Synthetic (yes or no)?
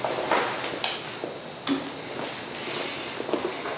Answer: no